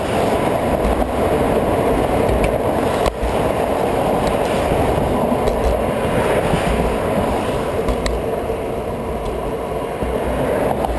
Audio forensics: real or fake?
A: real